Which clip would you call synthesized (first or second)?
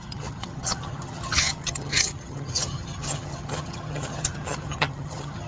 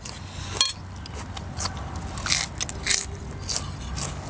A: first